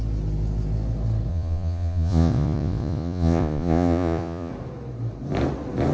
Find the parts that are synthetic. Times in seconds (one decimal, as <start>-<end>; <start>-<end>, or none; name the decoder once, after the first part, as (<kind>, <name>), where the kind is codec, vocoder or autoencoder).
1.3-4.5 (vocoder, Vocos)